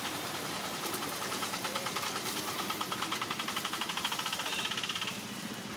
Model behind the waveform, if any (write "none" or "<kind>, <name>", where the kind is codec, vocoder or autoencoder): vocoder, BigVGAN v2